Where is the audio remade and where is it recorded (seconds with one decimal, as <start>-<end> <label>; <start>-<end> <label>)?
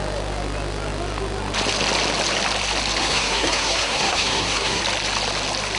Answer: 0.0-3.0 recorded; 3.0-4.8 remade; 4.8-5.8 recorded